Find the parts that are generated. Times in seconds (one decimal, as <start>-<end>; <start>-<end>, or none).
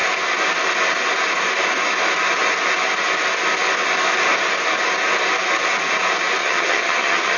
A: 6.4-7.4